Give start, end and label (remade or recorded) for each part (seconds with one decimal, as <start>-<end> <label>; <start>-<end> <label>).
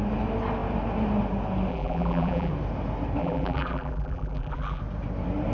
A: 0.0-1.7 recorded; 1.7-2.5 remade; 2.5-3.2 recorded; 3.2-4.8 remade; 4.8-5.5 recorded